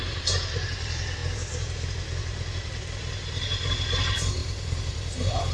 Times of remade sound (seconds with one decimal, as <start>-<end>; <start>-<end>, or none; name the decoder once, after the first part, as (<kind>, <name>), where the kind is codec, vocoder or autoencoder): 0.0-1.2 (vocoder, BigVGAN v2); 2.8-5.5